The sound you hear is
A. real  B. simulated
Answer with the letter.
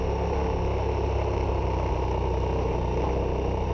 A